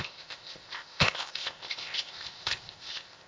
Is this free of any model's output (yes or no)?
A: no